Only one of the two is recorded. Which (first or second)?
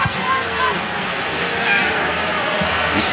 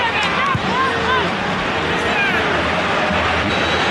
second